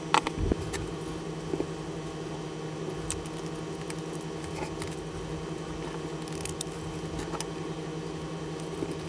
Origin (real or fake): real